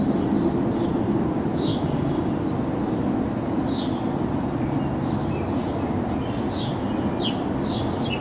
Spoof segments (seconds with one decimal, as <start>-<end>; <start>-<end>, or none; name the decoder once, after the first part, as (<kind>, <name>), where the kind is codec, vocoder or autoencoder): 1.7-2.3 (codec, DAC)

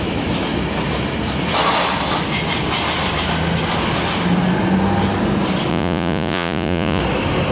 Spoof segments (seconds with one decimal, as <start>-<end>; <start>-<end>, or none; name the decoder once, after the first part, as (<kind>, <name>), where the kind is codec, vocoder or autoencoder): 5.7-7.0 (vocoder, Vocos)

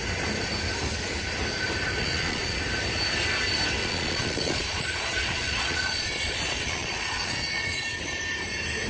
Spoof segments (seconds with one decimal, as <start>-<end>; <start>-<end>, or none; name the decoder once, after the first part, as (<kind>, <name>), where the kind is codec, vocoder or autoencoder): 2.0-2.6 (vocoder, Vocos); 3.8-7.8